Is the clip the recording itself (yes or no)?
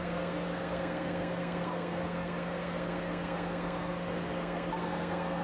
no